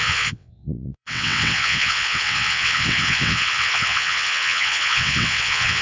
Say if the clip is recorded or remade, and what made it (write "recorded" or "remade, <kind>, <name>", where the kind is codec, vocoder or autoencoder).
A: remade, vocoder, WaveNeXt